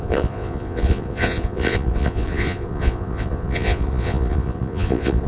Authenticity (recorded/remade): remade